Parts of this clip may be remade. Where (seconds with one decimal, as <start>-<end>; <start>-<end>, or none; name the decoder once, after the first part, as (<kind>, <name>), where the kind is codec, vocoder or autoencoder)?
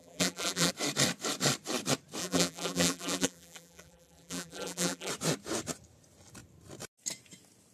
0.0-0.7 (vocoder, BigVGAN v2); 2.2-5.1